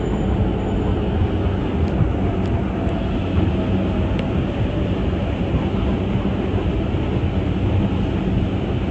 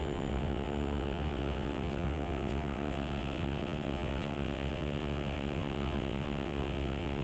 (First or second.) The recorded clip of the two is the first